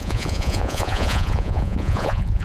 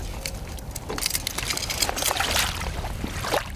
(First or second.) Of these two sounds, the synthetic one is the first